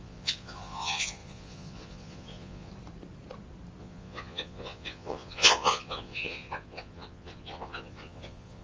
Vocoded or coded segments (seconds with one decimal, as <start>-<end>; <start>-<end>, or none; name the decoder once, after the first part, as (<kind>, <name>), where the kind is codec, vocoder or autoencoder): 0.0-2.7 (vocoder, Vocos); 3.8-8.6